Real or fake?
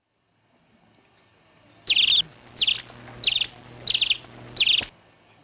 real